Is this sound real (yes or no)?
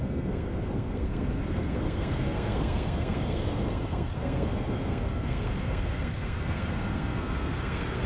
no